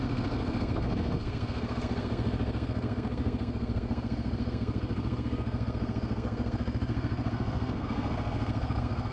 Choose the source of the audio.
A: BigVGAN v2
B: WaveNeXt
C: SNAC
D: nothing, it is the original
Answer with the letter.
C